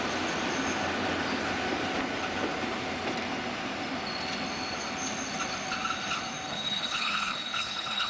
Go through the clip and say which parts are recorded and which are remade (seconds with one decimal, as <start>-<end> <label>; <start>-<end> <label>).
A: 0.0-6.5 recorded; 6.5-8.1 remade